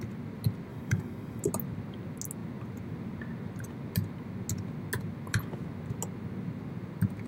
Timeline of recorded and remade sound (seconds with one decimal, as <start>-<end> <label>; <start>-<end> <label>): 0.0-0.7 recorded; 0.7-1.4 remade; 1.4-7.3 recorded